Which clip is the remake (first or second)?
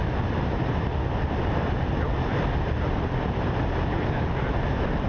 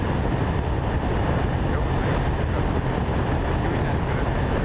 first